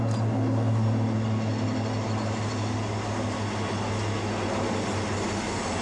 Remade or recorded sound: recorded